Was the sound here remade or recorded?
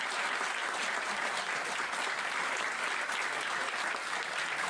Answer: recorded